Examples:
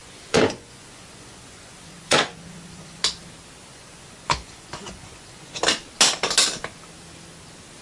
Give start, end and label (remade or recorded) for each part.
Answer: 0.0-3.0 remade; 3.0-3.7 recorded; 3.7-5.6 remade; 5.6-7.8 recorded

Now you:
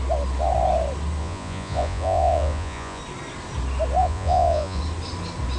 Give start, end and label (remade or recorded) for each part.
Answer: 0.0-1.2 recorded; 1.2-3.0 remade; 3.0-4.0 recorded; 4.0-4.8 remade; 4.8-5.6 recorded

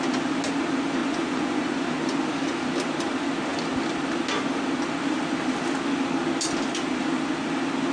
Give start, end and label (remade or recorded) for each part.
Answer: 0.0-1.0 recorded; 1.0-1.7 remade; 1.7-7.9 recorded

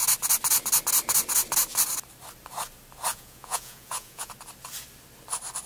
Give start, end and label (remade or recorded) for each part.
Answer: 0.0-3.1 recorded; 3.1-4.3 remade; 4.3-5.7 recorded

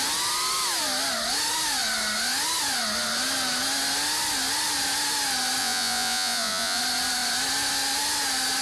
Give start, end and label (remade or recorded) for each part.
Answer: 0.0-5.6 recorded; 5.6-6.8 remade; 6.8-8.6 recorded

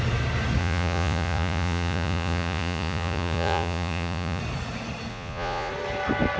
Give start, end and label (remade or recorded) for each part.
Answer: 0.0-0.6 recorded; 0.6-4.4 remade; 4.4-5.1 recorded; 5.1-5.7 remade; 5.7-6.4 recorded